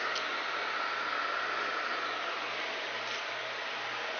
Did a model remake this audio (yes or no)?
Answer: yes